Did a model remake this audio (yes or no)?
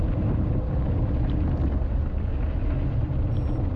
no